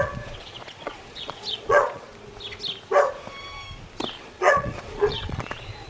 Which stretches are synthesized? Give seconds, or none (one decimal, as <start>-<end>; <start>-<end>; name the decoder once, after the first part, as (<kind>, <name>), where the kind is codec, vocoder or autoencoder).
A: 0.0-2.1 (vocoder, Vocos); 4.2-5.9